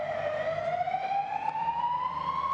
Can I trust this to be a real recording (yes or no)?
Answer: yes